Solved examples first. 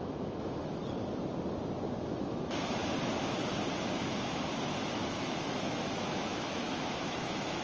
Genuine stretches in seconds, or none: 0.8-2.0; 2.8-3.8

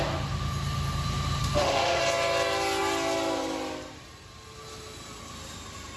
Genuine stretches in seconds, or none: 0.0-1.4; 2.0-6.0